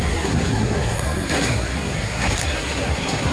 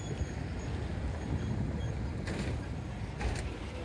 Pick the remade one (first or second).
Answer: first